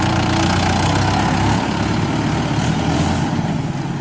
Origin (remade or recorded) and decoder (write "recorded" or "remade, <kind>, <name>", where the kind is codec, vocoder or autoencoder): recorded